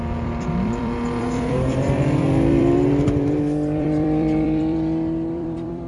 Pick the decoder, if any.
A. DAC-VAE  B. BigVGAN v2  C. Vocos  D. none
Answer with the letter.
B